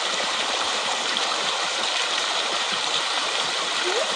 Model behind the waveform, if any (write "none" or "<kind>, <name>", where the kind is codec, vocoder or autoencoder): vocoder, BigVGAN v2